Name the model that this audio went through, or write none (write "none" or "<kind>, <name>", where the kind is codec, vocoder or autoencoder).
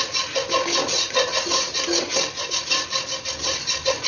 none